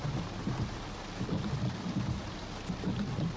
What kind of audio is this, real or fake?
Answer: real